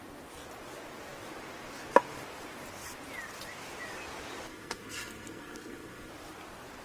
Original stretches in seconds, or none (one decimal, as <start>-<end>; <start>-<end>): 0.0-4.5; 6.1-6.8

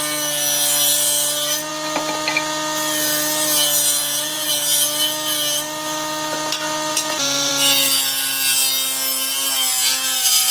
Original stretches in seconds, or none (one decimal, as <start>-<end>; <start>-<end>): 0.0-4.0; 4.5-6.9; 7.5-10.5

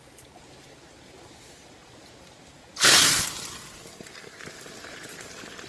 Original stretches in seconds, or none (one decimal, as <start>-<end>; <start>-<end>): 0.0-5.7